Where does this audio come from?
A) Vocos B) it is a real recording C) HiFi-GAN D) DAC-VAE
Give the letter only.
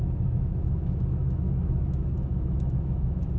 D